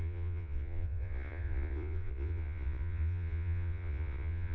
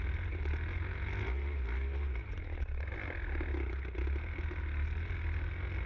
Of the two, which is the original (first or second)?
second